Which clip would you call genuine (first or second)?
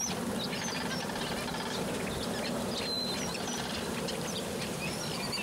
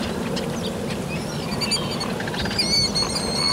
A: second